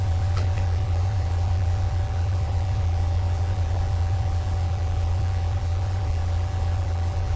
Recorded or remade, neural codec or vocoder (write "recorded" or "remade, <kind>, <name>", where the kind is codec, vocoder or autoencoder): remade, vocoder, BigVGAN v2